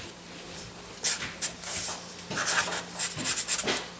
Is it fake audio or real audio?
real